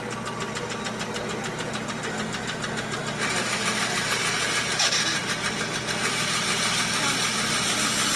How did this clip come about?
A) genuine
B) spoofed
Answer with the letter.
A